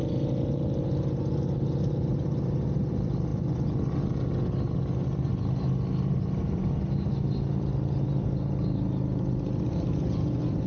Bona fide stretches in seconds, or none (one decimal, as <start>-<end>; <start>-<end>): 0.0-10.7